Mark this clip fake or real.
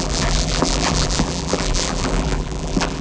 fake